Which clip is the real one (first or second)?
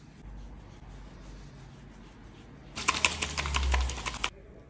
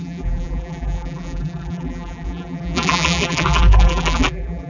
first